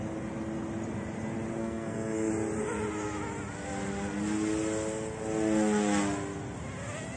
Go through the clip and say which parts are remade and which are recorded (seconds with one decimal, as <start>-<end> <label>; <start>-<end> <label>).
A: 0.0-1.6 recorded; 1.6-2.3 remade; 2.3-7.2 recorded